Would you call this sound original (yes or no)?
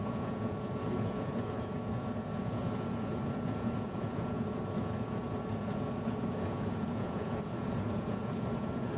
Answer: no